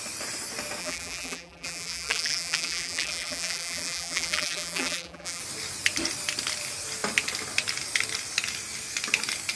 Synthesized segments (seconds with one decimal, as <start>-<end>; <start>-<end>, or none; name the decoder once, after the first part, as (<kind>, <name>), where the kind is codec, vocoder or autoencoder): 0.8-5.4 (vocoder, BigVGAN v2)